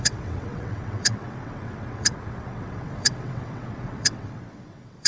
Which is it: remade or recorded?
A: remade